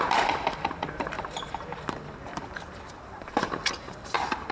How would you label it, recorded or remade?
remade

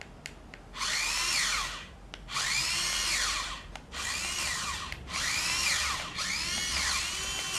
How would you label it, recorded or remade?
recorded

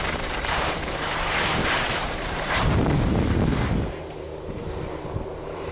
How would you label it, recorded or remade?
remade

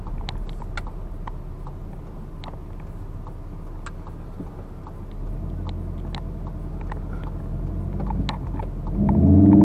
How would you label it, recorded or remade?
recorded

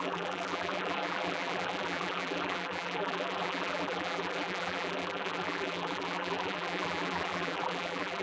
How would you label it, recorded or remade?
remade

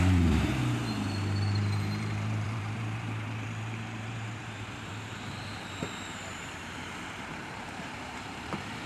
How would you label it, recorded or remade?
remade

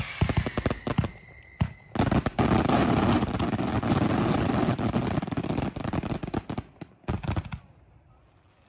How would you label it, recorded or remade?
recorded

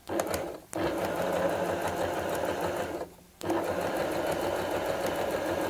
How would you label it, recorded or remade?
recorded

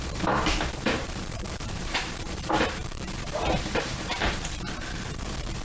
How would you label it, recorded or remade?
remade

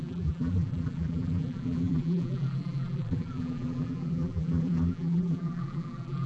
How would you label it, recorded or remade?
remade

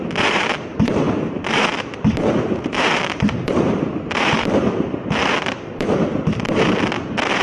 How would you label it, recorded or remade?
remade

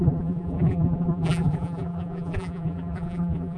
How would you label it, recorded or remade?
remade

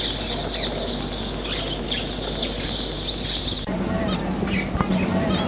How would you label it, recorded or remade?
recorded